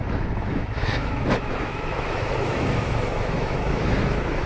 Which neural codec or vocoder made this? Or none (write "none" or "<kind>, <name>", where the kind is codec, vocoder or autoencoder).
autoencoder, DAC-VAE